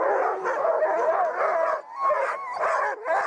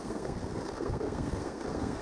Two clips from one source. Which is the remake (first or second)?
second